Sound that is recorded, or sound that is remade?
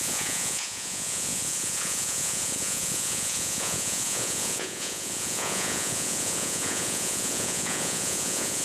remade